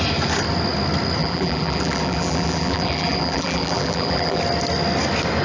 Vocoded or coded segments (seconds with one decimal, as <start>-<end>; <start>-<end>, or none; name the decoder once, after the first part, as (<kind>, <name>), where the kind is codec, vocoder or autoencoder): 1.2-4.4 (vocoder, BigVGAN v2)